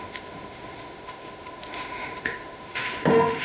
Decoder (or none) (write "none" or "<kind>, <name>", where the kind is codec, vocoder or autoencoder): autoencoder, DAC-VAE